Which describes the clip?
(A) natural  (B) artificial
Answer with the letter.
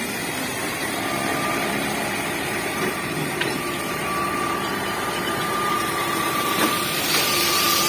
B